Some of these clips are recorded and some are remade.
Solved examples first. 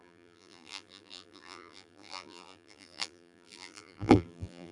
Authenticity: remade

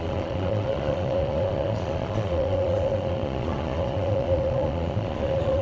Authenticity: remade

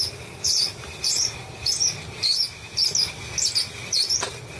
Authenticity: recorded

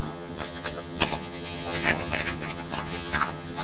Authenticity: remade